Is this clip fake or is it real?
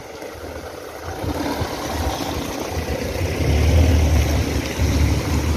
real